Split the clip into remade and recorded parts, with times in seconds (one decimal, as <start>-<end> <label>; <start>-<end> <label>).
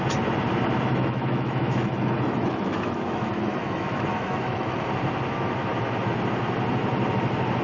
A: 0.0-1.0 recorded; 1.0-4.9 remade; 4.9-7.6 recorded